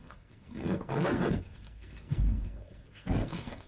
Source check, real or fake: fake